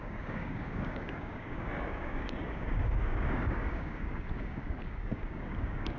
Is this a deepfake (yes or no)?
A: yes